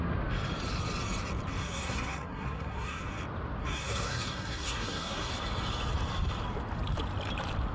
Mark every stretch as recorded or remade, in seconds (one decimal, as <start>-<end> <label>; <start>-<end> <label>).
0.0-1.6 recorded; 1.6-3.2 remade; 3.2-3.6 recorded; 3.6-5.3 remade; 5.3-7.7 recorded